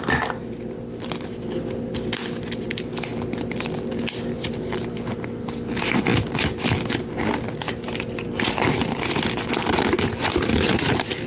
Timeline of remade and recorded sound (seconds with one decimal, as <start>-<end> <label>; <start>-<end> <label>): 0.0-11.3 recorded